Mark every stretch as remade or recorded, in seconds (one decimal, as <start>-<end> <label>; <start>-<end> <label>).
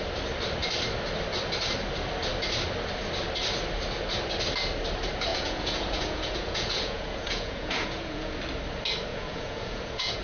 0.0-5.3 recorded; 5.3-8.4 remade; 8.4-9.1 recorded; 9.1-10.2 remade